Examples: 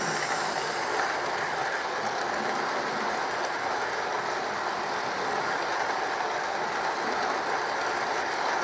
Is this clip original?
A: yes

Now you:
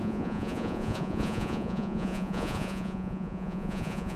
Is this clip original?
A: no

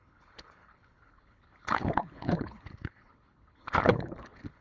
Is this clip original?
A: no